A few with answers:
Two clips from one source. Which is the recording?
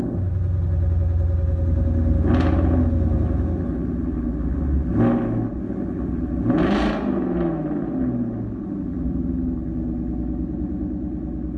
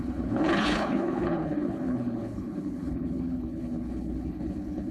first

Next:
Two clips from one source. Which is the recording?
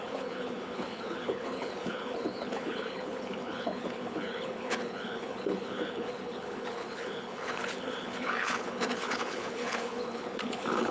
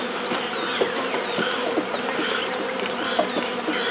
second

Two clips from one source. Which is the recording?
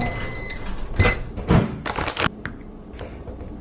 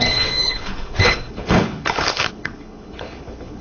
first